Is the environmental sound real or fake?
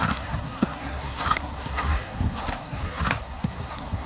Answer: fake